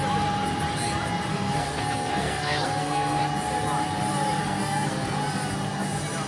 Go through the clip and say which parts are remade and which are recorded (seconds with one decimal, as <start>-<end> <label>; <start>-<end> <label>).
0.0-1.3 recorded; 1.3-3.2 remade; 3.2-4.4 recorded; 4.4-5.2 remade; 5.2-6.3 recorded